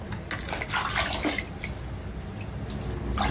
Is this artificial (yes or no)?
no